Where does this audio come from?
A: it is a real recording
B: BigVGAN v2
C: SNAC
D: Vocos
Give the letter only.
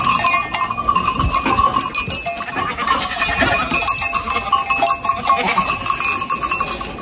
A